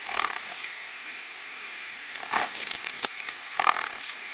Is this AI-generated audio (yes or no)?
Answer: yes